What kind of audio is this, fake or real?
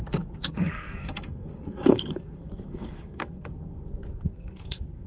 fake